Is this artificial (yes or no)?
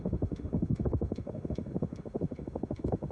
yes